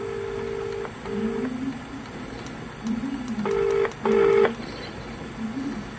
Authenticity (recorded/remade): recorded